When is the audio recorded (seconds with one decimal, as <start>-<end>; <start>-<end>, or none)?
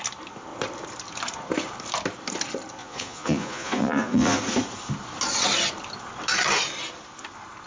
0.0-2.8; 4.4-7.7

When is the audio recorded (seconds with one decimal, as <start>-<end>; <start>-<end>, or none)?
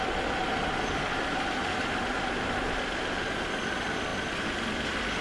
0.0-5.2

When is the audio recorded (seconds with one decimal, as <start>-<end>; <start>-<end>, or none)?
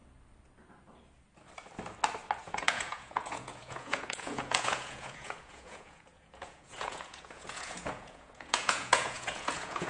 0.0-2.4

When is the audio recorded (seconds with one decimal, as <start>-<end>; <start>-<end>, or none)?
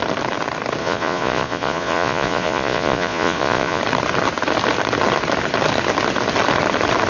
0.0-0.8; 3.8-7.1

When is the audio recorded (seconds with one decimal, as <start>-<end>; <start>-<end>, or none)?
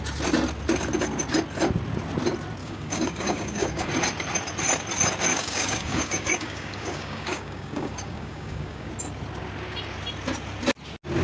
0.0-2.6; 3.9-5.3; 8.9-11.2